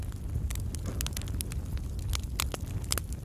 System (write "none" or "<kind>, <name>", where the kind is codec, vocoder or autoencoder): none